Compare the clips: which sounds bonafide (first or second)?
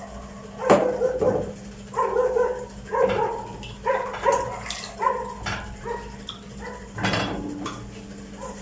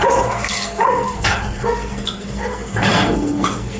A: first